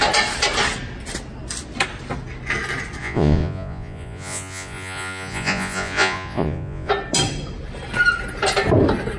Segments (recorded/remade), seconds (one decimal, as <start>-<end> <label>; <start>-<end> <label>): 0.0-3.0 recorded; 3.0-6.9 remade; 6.9-9.2 recorded